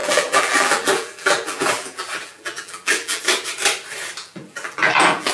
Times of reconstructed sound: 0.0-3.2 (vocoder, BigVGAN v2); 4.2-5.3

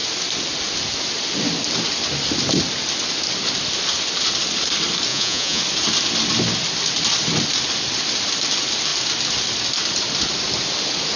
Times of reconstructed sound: 5.1-5.6 (vocoder, Vocos)

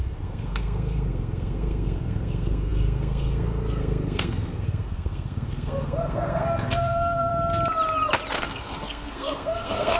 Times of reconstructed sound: 0.0-7.3 (codec, SNAC); 8.4-10.0

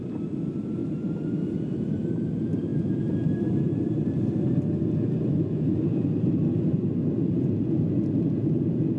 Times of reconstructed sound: 0.8-1.3 (vocoder, BigVGAN v2); 2.7-7.4

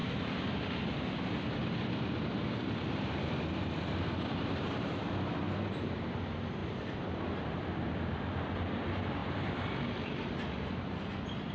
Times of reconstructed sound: 0.0-0.6 (vocoder, BigVGAN v2); 1.6-5.4; 6.6-7.9; 9.2-10.3

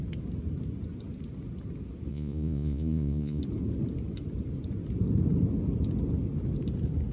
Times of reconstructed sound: 2.1-3.4 (vocoder, Vocos)

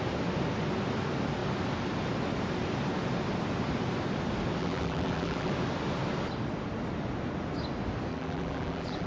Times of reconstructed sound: 4.6-5.5 (vocoder, BigVGAN v2); 8.1-9.1

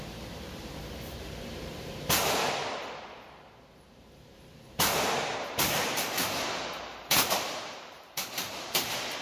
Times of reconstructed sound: 0.0-2.6 (vocoder, BigVGAN v2); 3.6-9.2